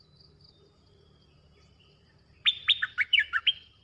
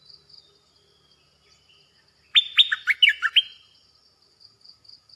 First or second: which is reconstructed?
first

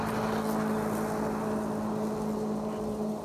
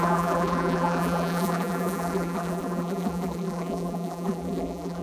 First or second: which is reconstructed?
second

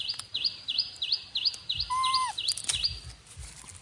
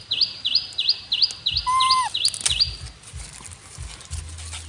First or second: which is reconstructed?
first